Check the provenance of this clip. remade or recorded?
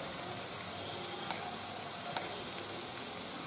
recorded